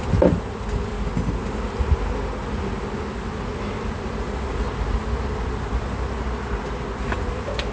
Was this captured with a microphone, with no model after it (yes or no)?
yes